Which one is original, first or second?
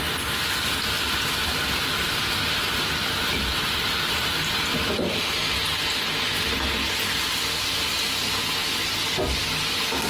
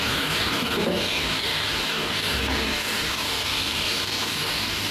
first